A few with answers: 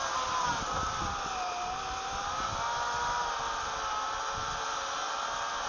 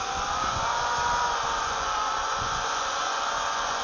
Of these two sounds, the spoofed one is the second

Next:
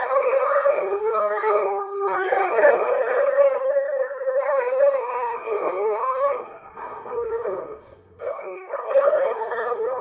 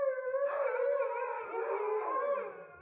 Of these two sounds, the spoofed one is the first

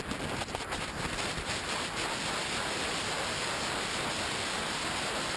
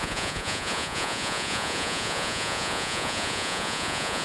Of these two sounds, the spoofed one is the second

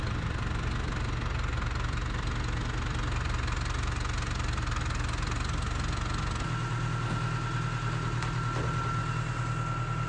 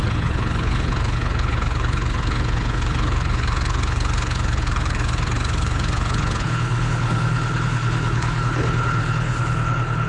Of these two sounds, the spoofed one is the second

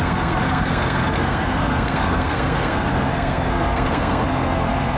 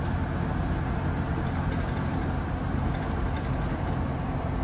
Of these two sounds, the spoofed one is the first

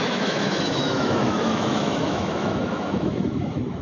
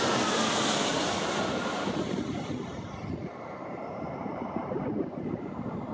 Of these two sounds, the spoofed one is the first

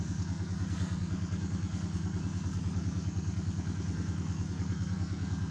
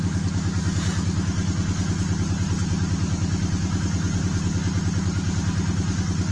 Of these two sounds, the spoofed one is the first